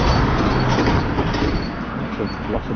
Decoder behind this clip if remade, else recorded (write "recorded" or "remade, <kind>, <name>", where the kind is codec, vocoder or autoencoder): remade, vocoder, BigVGAN v2